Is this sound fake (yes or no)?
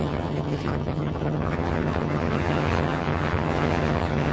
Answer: yes